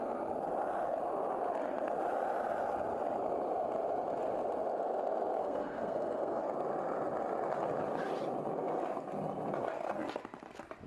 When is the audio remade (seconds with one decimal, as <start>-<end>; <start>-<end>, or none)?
5.4-6.4